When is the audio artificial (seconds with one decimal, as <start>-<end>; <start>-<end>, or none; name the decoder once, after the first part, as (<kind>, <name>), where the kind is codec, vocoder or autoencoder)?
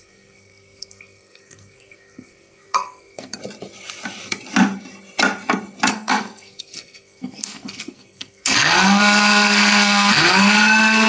0.0-3.4 (codec, SNAC); 5.9-11.1